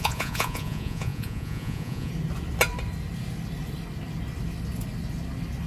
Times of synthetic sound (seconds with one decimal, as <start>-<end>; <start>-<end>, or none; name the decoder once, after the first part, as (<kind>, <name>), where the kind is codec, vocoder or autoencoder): 0.0-2.1 (vocoder, Vocos)